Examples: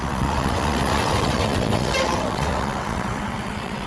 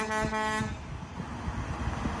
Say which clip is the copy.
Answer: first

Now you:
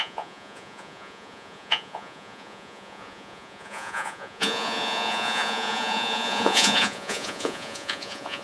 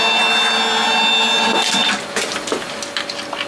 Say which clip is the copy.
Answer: first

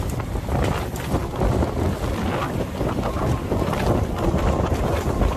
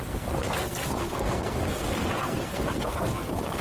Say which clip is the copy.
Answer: second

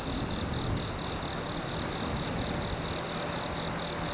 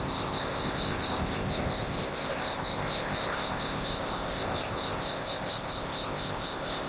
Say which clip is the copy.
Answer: second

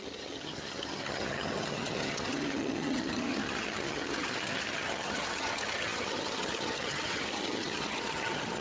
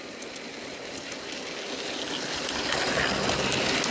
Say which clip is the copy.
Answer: first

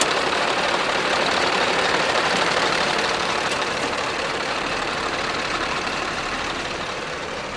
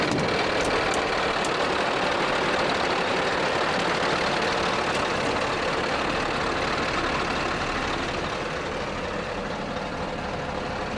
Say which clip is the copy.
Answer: first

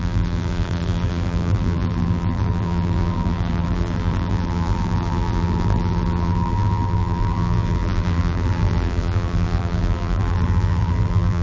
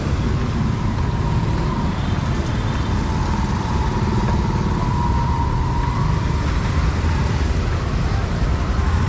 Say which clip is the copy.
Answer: first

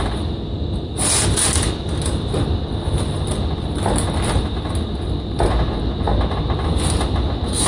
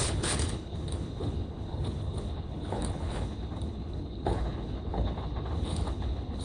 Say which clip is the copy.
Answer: second